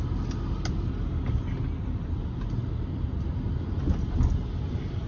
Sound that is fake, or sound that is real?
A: real